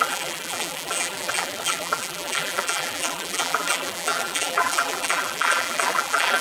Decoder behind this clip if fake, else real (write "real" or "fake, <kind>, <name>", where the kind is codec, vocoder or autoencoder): fake, vocoder, BigVGAN v2